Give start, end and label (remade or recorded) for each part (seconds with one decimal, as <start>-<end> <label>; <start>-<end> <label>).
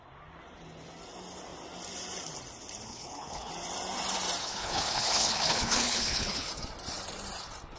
0.0-2.9 recorded; 2.9-3.5 remade; 3.5-4.4 recorded; 4.4-6.5 remade; 6.5-7.8 recorded